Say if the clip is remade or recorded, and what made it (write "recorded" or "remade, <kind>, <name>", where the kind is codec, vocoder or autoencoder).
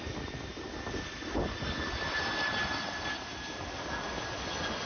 recorded